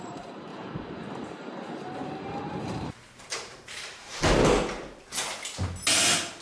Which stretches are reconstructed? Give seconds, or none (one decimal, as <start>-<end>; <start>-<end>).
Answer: 0.5-4.3